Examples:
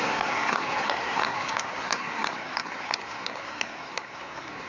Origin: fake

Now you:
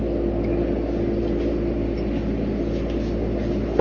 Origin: real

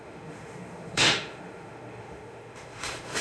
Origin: fake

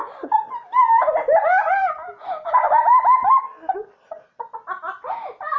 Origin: real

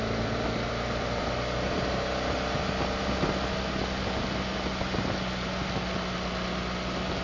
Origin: real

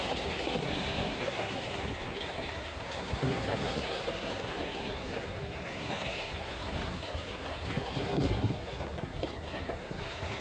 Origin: fake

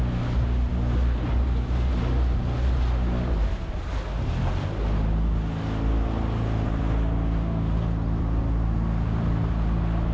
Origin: real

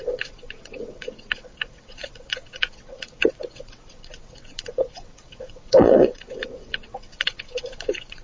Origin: fake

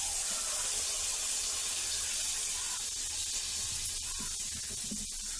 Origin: real